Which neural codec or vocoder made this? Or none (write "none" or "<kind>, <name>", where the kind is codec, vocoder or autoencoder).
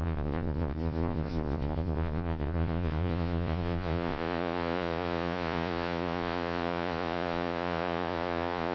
vocoder, Vocos